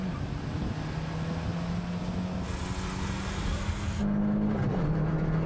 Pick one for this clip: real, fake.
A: real